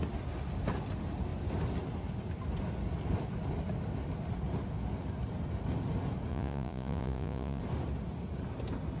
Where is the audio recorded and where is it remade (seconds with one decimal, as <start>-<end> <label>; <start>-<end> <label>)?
0.0-6.3 recorded; 6.3-7.6 remade; 7.6-9.0 recorded